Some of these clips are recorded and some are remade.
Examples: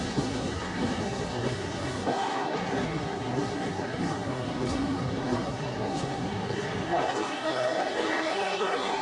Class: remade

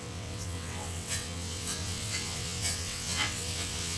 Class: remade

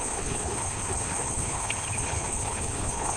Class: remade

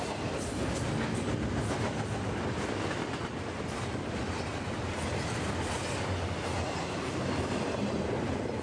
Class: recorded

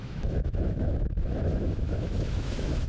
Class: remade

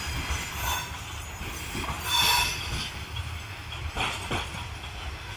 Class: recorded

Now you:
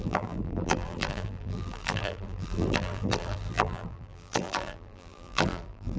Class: remade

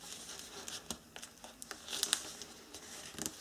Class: recorded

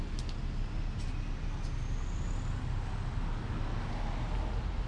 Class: recorded